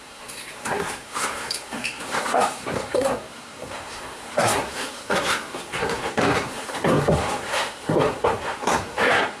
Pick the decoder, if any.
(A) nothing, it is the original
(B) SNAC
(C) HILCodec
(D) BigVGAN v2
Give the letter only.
B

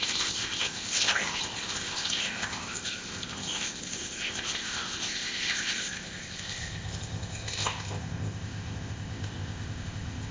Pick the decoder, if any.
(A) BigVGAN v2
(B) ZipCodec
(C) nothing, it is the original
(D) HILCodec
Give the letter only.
B